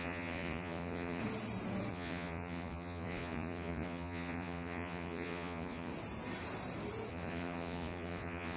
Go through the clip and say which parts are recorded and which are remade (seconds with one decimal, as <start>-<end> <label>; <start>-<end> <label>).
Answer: 0.0-1.2 remade; 1.2-1.9 recorded; 1.9-5.9 remade; 5.9-7.1 recorded; 7.1-8.6 remade